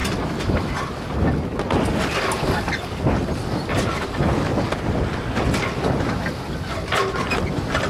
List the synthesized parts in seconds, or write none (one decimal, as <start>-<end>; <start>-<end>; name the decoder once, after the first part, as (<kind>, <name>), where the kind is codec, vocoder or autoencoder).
none